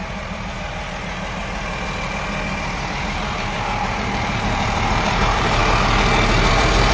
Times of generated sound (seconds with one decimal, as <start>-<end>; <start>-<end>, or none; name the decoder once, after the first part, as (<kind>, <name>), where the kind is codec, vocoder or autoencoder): 0.0-1.4 (vocoder, BigVGAN v2); 3.0-5.6; 6.5-6.9